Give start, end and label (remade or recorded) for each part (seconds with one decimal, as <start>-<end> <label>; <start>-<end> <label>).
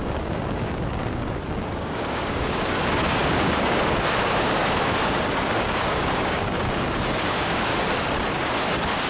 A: 0.0-7.7 remade; 7.7-8.3 recorded; 8.3-9.1 remade